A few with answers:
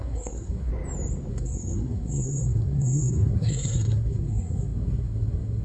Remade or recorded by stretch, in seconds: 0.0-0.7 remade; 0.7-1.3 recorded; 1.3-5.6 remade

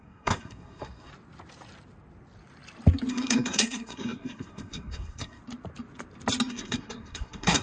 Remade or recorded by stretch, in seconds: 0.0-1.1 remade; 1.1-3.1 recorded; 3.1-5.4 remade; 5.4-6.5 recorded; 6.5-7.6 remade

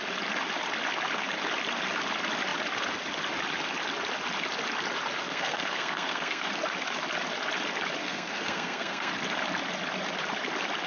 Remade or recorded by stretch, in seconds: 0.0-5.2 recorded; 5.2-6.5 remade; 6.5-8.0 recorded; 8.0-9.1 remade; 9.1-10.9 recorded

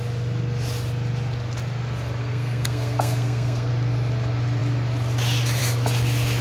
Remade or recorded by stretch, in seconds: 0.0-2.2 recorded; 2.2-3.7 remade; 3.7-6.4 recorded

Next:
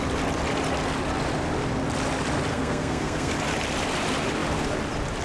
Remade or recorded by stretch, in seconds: 0.0-2.5 recorded; 2.5-3.3 remade; 3.3-5.2 recorded

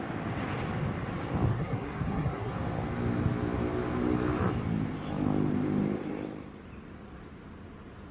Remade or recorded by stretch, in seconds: 0.0-1.5 recorded; 1.5-2.5 remade; 2.5-8.1 recorded